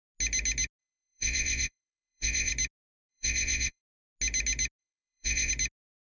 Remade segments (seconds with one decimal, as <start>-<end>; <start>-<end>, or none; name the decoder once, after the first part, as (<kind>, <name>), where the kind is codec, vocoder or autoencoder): 0.8-2.5 (vocoder, WaveNeXt); 3.1-3.8; 4.8-5.5